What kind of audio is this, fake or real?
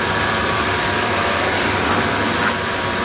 fake